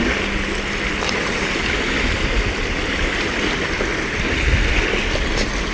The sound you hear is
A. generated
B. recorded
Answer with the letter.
B